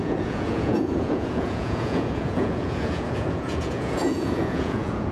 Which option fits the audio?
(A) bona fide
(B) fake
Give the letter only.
B